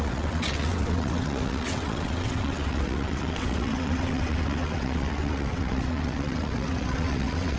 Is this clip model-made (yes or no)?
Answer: yes